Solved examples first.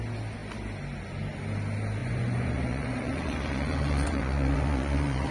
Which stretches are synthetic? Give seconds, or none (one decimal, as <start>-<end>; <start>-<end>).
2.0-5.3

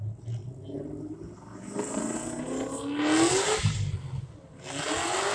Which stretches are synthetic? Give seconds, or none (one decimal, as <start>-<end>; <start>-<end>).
none

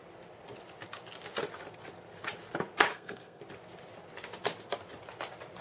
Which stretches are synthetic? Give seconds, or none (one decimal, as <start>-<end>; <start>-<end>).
2.9-3.4